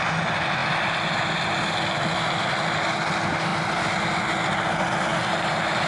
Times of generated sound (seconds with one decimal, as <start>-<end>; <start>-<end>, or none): none